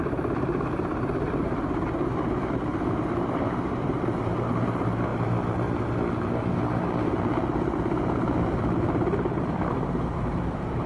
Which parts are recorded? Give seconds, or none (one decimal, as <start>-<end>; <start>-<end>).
5.1-9.7